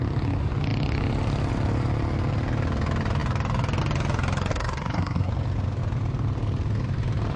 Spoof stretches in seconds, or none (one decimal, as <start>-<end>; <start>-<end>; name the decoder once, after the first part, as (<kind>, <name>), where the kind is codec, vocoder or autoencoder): 4.5-5.3 (codec, SNAC)